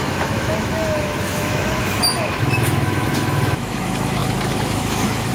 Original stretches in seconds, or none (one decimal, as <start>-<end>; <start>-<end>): none